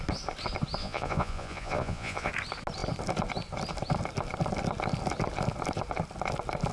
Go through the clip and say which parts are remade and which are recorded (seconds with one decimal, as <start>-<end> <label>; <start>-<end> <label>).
0.0-0.8 recorded; 0.8-2.3 remade; 2.3-6.7 recorded